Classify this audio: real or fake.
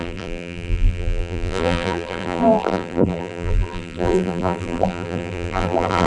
fake